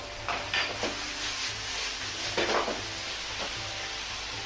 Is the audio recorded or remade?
recorded